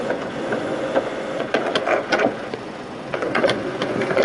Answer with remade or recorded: remade